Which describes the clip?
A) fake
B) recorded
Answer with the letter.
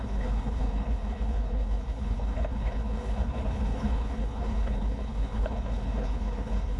A